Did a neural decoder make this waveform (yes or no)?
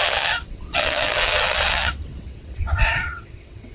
yes